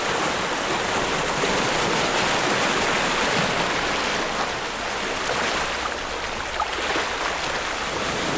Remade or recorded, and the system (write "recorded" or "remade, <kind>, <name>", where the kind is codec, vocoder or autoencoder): recorded